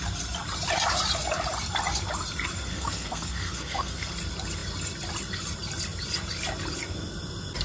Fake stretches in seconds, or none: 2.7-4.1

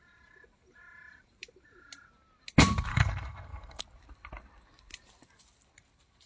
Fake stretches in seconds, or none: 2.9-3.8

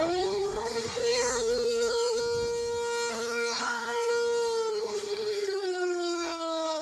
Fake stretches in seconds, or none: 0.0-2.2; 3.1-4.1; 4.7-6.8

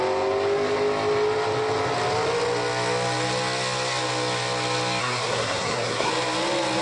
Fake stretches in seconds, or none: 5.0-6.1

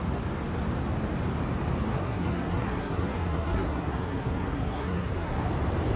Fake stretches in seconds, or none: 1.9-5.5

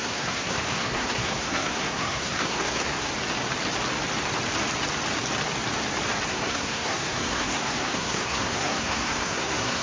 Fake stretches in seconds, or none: 0.0-3.1; 6.3-9.8

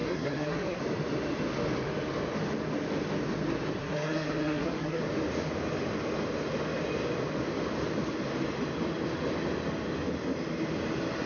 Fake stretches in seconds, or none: 0.0-0.8; 3.8-5.0